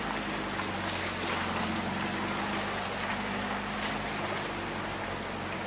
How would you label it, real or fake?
real